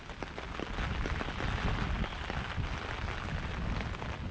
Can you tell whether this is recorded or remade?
recorded